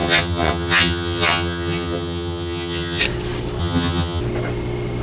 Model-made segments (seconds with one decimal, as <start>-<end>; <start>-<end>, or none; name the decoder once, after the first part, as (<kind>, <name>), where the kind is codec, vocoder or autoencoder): 0.0-3.0 (vocoder, HiFi-GAN); 3.6-4.2